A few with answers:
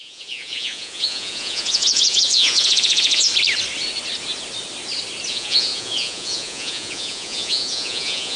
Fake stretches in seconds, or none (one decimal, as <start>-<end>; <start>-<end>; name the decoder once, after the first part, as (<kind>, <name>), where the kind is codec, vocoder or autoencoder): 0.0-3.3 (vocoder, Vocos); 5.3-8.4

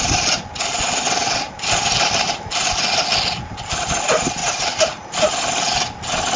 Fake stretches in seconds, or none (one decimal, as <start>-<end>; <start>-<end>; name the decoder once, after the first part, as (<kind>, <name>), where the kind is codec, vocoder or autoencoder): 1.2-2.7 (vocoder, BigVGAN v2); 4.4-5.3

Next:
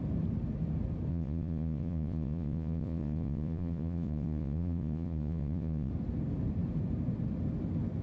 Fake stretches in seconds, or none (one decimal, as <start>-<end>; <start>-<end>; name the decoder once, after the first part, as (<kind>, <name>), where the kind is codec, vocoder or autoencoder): 1.1-5.9 (vocoder, Vocos)

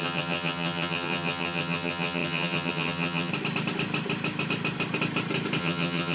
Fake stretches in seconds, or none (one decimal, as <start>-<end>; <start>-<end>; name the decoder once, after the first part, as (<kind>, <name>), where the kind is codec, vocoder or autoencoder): 0.0-3.3 (vocoder, HiFi-GAN); 5.6-6.1